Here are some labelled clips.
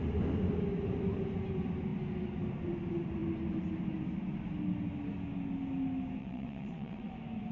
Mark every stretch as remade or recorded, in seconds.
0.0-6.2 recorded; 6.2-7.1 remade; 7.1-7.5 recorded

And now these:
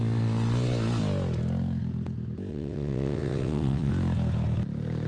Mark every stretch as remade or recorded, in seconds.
0.0-2.5 recorded; 2.5-3.9 remade; 3.9-5.1 recorded